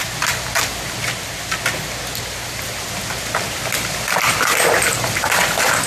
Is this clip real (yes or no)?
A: yes